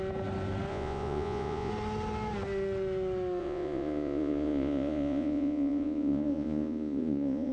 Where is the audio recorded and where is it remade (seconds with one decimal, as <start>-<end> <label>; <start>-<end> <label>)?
0.0-0.7 recorded; 0.7-1.7 remade; 1.7-3.4 recorded; 3.4-7.5 remade